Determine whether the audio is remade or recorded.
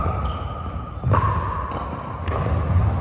recorded